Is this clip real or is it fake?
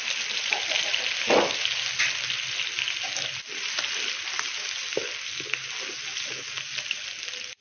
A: real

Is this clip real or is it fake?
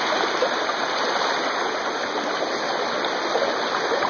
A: real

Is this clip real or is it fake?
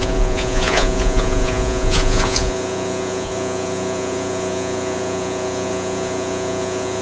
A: fake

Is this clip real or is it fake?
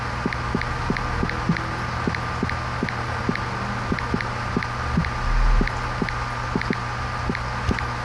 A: real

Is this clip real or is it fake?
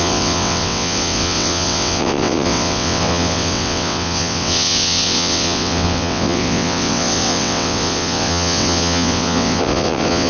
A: fake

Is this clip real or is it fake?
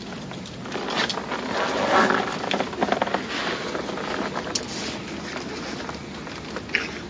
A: real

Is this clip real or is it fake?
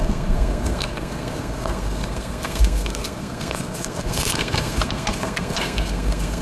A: fake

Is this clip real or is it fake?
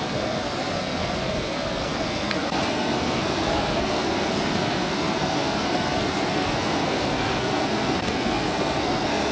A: fake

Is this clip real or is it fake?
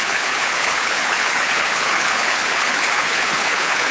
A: fake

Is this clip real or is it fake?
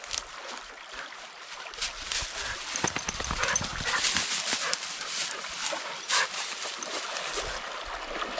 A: real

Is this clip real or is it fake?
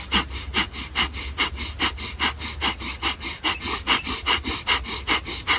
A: real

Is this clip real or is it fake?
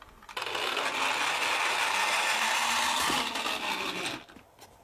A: real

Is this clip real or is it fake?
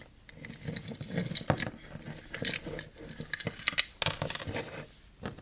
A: real